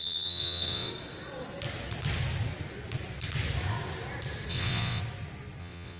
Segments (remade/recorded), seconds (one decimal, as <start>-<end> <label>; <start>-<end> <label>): 0.0-0.9 remade; 0.9-4.5 recorded; 4.5-5.0 remade; 5.0-5.6 recorded; 5.6-6.0 remade